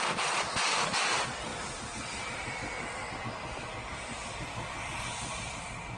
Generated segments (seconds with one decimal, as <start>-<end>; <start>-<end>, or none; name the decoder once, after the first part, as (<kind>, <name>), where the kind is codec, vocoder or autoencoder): none

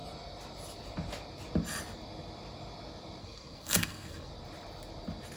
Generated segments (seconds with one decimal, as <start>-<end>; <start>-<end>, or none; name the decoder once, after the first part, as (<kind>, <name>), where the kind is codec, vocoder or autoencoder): 3.2-4.3 (codec, SNAC)

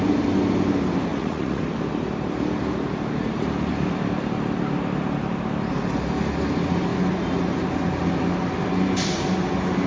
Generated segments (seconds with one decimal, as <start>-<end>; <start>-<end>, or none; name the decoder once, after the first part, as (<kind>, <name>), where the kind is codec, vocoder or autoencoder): 1.1-1.6 (vocoder, Vocos)